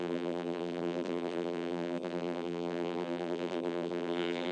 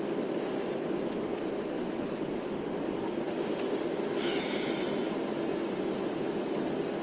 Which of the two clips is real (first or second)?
second